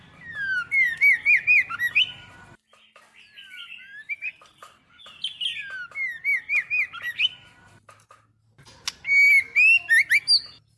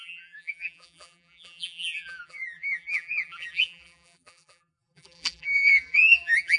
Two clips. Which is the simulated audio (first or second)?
second